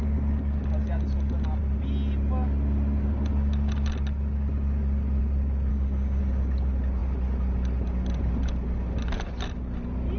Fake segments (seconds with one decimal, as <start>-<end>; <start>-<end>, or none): 5.7-6.2

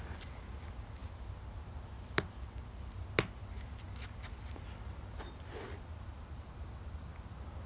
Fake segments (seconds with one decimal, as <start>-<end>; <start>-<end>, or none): none

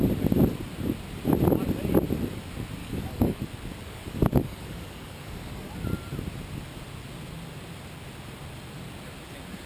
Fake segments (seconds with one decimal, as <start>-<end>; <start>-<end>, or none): 2.8-3.4; 3.8-5.7

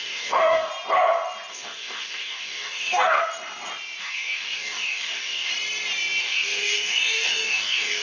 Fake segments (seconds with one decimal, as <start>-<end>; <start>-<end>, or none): 0.0-0.7; 1.5-3.2; 4.0-5.5; 6.2-8.0

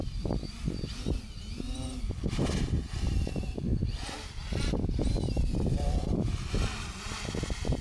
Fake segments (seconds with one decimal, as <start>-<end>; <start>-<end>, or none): none

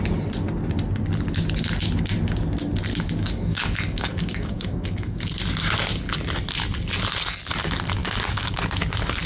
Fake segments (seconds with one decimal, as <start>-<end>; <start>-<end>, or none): 2.9-5.3; 8.0-8.6

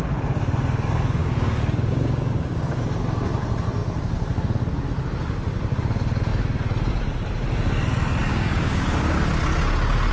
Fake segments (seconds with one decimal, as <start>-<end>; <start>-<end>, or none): 1.2-2.8; 8.2-9.1

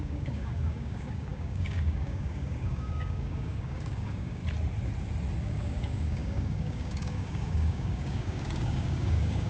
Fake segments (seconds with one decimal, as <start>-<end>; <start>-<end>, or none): 0.0-4.4; 5.4-9.5